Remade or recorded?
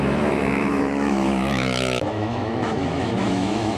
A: remade